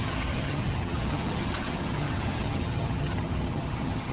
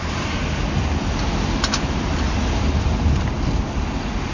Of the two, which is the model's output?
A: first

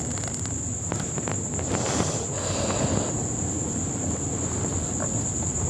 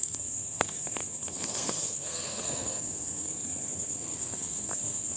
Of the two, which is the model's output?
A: second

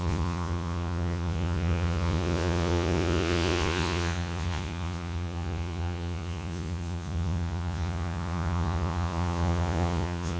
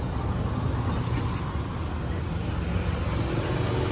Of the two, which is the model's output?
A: first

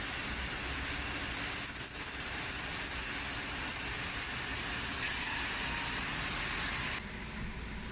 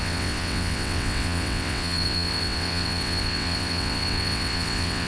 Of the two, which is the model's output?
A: second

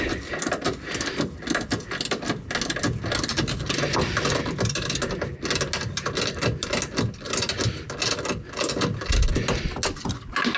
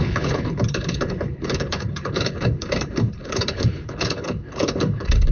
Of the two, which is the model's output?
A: second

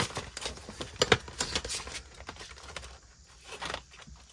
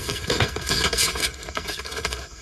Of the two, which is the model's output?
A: second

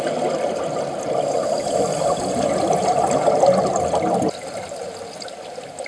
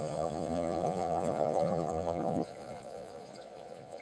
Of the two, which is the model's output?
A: second